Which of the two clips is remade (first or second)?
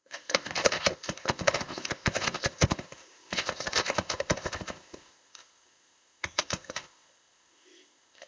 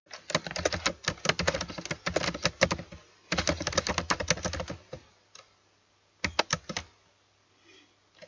first